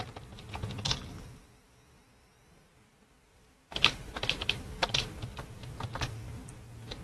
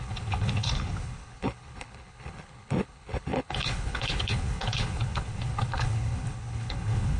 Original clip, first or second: first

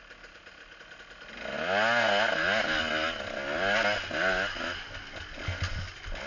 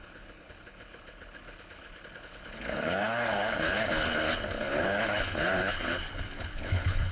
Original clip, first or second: first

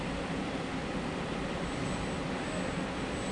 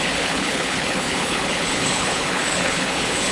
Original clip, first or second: first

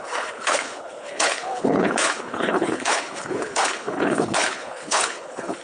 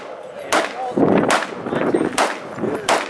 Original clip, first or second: second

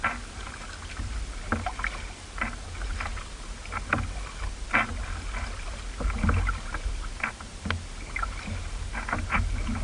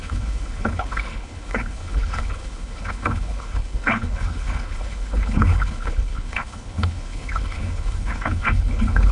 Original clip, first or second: first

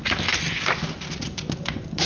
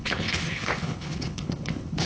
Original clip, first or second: first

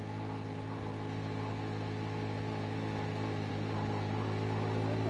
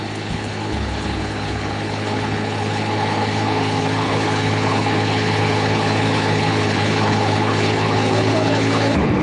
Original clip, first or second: first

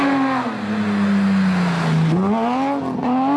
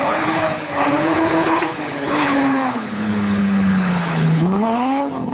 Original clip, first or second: first